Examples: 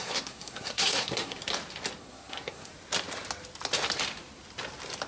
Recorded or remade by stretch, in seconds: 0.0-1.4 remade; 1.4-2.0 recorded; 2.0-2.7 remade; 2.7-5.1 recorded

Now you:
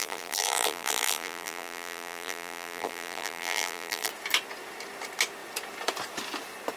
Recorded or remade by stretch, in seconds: 0.0-4.1 remade; 4.1-6.8 recorded

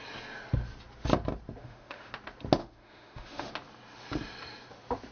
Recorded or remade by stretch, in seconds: 0.0-1.6 recorded; 1.6-2.1 remade; 2.1-2.6 recorded; 2.6-3.5 remade; 3.5-5.1 recorded

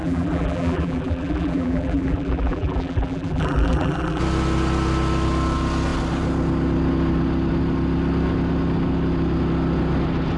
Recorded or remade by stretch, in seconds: 0.0-4.2 remade; 4.2-10.4 recorded

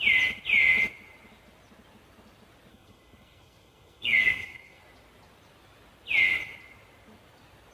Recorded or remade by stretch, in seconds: 0.0-2.7 recorded; 2.7-4.8 remade; 4.8-7.7 recorded